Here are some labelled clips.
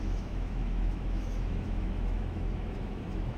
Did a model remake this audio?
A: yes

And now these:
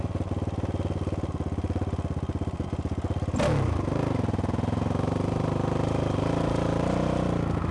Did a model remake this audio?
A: no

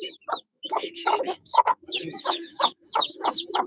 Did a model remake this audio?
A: yes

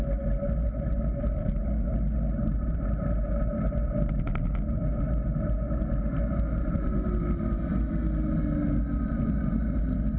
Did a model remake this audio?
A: no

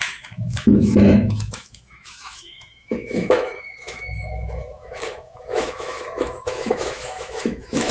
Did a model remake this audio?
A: yes